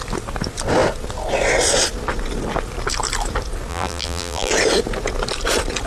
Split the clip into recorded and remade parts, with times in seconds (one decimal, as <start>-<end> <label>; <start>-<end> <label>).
0.0-3.7 recorded; 3.7-4.5 remade; 4.5-5.9 recorded